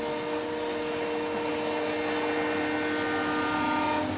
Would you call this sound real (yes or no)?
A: yes